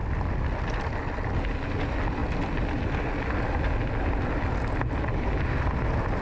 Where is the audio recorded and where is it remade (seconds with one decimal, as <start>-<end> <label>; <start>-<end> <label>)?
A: 0.0-6.2 recorded